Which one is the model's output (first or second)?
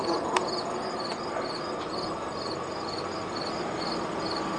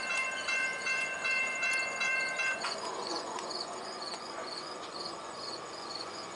second